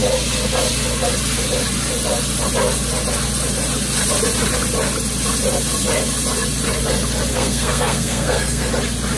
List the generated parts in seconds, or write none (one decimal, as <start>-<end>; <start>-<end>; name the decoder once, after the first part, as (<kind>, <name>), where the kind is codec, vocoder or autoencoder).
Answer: 7.3-8.7 (codec, SNAC)